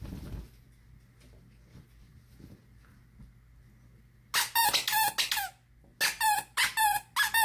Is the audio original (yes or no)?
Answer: yes